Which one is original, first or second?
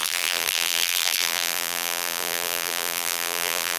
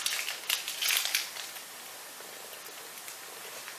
second